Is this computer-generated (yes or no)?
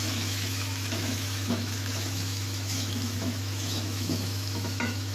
yes